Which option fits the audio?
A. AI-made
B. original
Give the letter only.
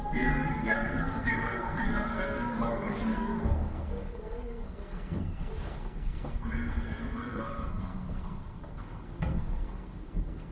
A